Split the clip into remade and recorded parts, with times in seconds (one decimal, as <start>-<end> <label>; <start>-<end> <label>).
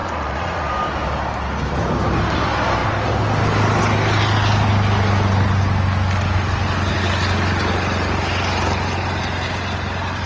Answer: 0.0-0.7 remade; 0.7-10.3 recorded